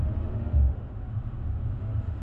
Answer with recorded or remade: remade